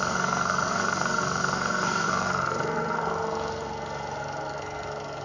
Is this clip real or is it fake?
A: fake